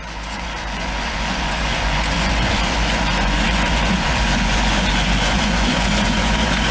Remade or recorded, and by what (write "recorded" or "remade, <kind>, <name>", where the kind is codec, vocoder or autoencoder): remade, vocoder, Vocos